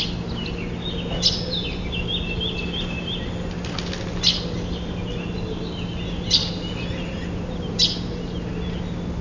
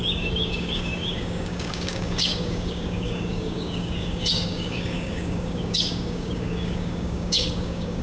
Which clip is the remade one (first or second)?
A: second